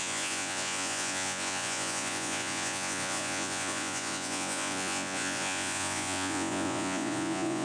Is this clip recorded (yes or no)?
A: no